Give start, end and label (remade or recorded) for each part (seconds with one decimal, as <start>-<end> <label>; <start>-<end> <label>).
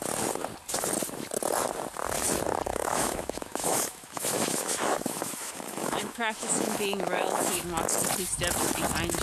0.0-2.7 recorded; 2.7-7.6 remade; 7.6-9.2 recorded